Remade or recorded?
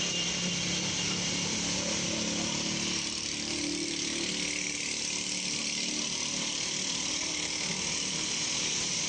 recorded